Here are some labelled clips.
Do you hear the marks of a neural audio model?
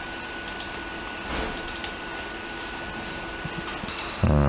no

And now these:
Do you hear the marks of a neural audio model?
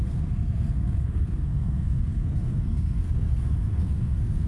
yes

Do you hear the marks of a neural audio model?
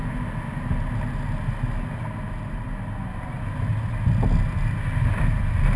no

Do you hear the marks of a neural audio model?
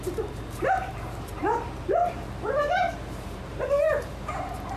yes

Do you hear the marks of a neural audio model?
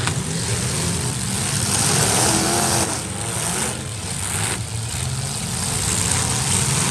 no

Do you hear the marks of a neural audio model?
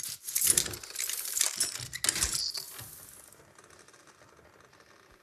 no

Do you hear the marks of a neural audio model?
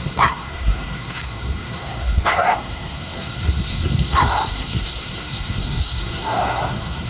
yes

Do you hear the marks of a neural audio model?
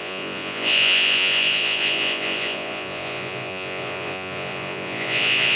yes